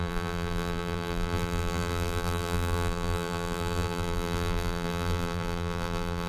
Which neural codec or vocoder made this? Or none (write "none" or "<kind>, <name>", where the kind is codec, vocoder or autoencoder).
vocoder, BigVGAN v2